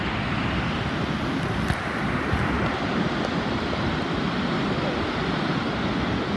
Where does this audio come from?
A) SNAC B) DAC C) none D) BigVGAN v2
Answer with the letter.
C